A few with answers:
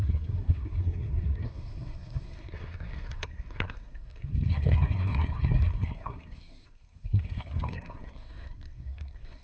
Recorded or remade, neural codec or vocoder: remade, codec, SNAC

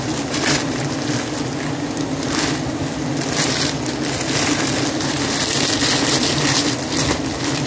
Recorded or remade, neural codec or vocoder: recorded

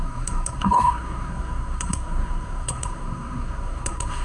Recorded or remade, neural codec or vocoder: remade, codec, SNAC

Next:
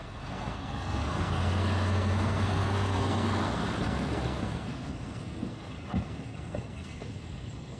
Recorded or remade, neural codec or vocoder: remade, codec, SNAC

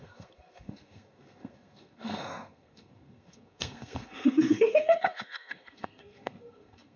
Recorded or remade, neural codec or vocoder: remade, codec, SNAC